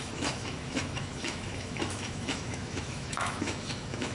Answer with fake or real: fake